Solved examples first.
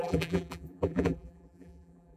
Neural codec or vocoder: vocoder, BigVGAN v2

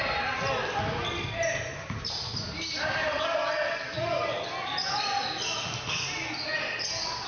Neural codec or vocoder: none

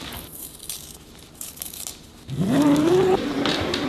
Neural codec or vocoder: vocoder, BigVGAN v2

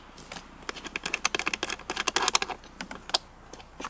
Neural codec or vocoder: none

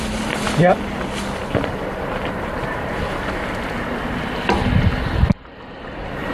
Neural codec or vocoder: none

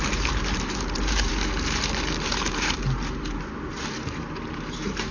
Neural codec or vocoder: vocoder, BigVGAN v2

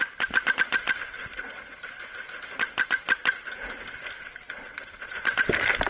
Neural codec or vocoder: none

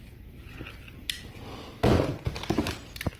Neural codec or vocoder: none